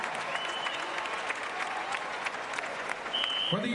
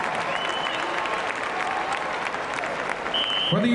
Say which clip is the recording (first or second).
second